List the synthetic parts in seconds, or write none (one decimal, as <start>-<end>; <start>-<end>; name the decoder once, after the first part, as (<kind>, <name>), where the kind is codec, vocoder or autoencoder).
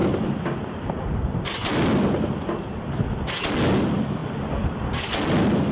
none